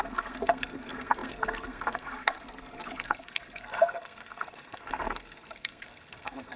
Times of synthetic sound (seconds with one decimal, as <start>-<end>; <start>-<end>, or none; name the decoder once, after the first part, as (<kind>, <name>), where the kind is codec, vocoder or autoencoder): 0.0-6.6 (codec, SNAC)